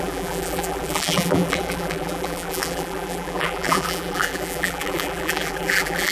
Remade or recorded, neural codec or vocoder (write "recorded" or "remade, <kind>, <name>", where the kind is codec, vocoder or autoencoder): remade, vocoder, BigVGAN v2